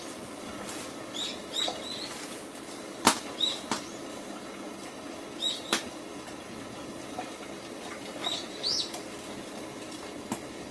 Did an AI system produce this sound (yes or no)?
no